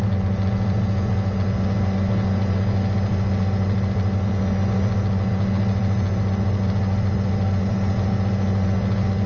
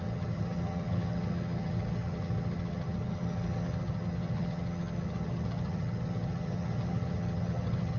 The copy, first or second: second